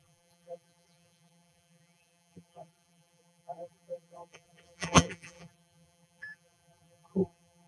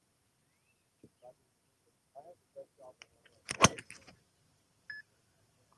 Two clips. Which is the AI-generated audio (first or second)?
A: first